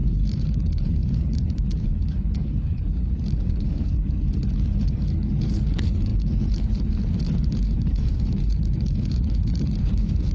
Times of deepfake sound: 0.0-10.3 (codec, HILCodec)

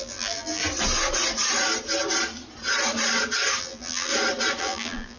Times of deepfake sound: 0.0-0.6 (vocoder, BigVGAN v2); 3.6-4.1; 4.6-5.2